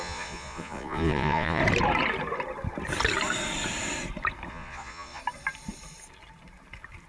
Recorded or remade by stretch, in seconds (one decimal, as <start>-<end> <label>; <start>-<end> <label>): 0.0-1.6 remade; 1.6-4.5 recorded; 4.5-5.2 remade; 5.2-7.1 recorded